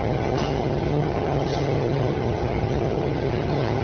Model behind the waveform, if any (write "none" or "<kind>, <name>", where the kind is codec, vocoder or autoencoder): vocoder, HiFi-GAN